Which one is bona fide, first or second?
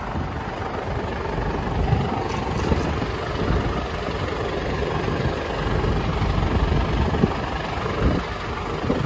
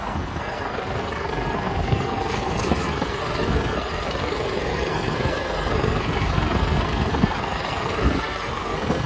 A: first